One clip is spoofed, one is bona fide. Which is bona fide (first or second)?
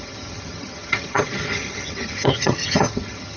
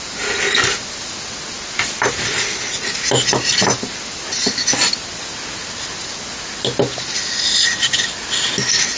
second